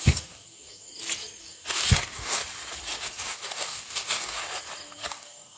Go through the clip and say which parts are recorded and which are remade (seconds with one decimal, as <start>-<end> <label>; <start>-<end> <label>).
0.0-0.9 remade; 0.9-1.4 recorded; 1.4-2.4 remade; 2.4-3.0 recorded; 3.0-4.4 remade; 4.4-5.1 recorded; 5.1-5.6 remade